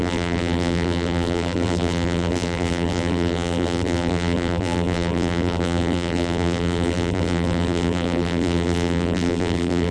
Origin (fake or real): fake